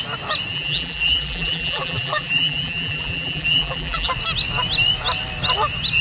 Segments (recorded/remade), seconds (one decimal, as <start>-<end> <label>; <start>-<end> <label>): 0.0-0.5 recorded; 0.5-4.1 remade; 4.1-6.0 recorded